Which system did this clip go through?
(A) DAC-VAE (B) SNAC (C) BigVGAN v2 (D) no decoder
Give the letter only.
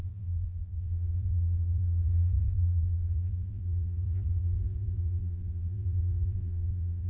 C